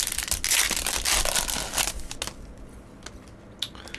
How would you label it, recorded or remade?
recorded